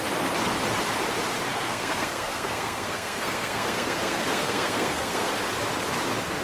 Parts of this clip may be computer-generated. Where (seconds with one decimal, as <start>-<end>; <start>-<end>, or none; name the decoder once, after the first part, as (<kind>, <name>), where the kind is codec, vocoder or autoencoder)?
1.5-5.3 (codec, SNAC)

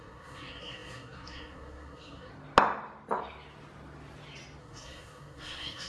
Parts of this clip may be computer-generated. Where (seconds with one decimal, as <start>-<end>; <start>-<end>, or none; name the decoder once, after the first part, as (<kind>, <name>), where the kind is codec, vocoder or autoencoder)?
0.0-2.3 (codec, SNAC); 4.6-5.9

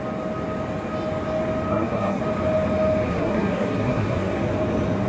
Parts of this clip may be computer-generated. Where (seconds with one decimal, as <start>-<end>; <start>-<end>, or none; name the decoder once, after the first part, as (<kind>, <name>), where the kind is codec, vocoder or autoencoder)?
1.7-2.2 (codec, SNAC); 3.1-4.4